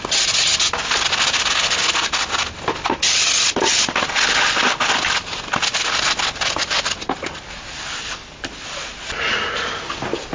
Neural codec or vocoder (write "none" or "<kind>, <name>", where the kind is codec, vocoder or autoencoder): none